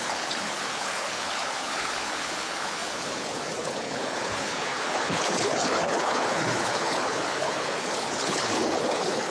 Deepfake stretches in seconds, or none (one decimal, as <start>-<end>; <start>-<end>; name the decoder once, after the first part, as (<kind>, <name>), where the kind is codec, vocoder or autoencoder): 0.0-9.3 (codec, HILCodec)